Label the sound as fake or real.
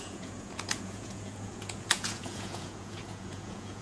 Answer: fake